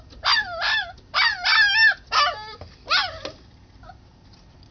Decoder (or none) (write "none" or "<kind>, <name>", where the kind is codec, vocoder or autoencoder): none